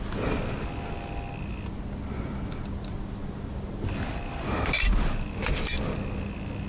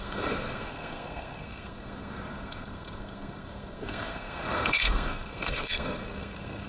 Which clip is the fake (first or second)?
second